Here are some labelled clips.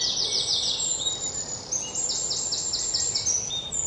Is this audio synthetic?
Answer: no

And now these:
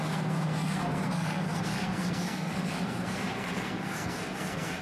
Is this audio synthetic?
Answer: yes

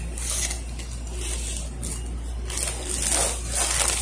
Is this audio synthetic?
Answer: no